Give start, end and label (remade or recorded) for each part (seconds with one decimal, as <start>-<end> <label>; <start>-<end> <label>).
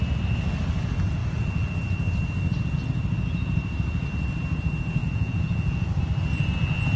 0.0-5.0 recorded; 5.0-6.0 remade; 6.0-7.0 recorded